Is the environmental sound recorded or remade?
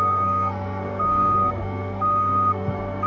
remade